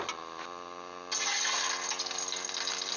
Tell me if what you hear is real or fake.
real